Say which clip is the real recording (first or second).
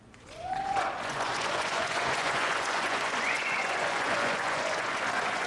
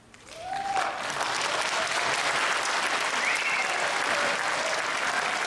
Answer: second